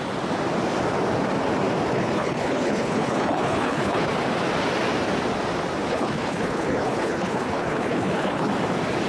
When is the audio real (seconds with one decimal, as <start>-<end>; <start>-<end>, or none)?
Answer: 0.0-1.9; 4.1-5.9; 8.5-9.1